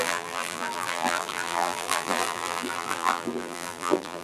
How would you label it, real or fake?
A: fake